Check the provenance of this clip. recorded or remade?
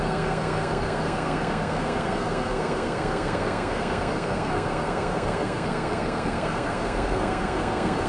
remade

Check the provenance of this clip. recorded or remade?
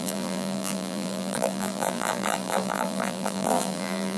remade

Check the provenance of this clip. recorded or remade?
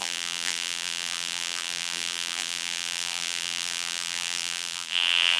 remade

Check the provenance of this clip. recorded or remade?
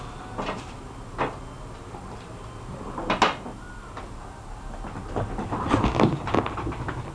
recorded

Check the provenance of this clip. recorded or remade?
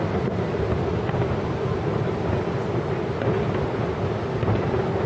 recorded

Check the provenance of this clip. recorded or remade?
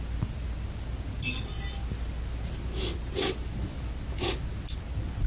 recorded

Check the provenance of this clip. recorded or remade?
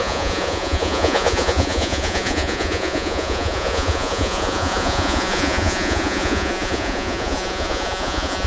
remade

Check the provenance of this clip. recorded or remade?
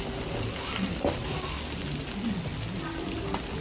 recorded